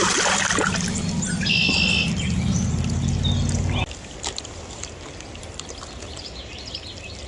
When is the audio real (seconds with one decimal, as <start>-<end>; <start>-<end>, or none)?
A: 0.0-7.3